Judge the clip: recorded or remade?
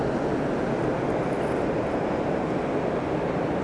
recorded